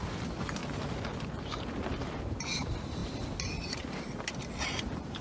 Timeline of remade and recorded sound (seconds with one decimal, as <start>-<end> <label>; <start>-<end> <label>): 0.0-5.2 recorded